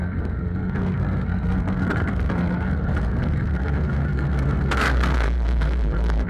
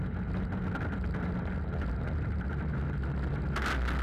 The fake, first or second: first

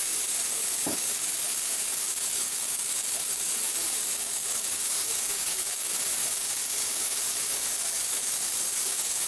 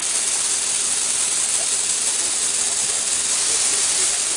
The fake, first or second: first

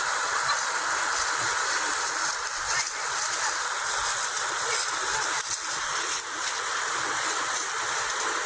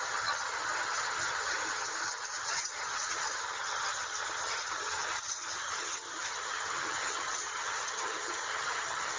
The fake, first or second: second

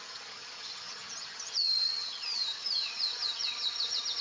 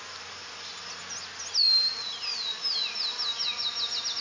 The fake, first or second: first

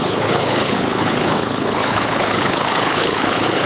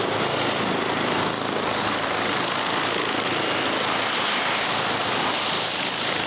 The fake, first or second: first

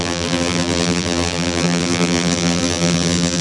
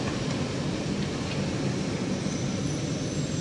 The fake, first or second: first